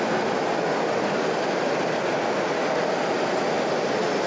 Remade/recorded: recorded